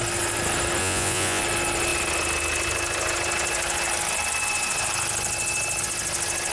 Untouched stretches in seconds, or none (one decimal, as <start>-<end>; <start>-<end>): 0.0-0.8; 1.4-6.5